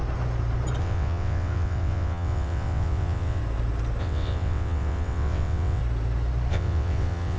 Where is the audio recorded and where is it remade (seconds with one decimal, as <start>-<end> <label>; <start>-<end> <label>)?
0.0-0.8 recorded; 0.8-3.4 remade; 3.4-4.0 recorded; 4.0-5.8 remade; 5.8-6.5 recorded; 6.5-7.4 remade